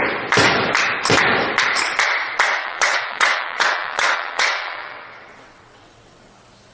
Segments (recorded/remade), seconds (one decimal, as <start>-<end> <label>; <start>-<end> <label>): 0.0-2.6 recorded; 2.6-6.3 remade; 6.3-6.7 recorded